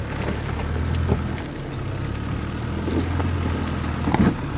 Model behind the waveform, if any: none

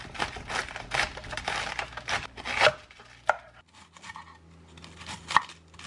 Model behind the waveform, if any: none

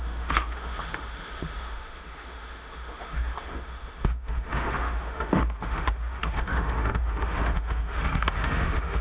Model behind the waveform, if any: autoencoder, DAC-VAE